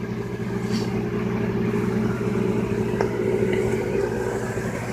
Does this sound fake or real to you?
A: real